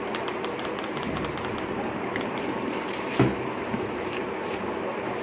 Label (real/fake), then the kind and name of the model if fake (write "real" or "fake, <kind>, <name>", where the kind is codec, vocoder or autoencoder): fake, vocoder, BigVGAN v2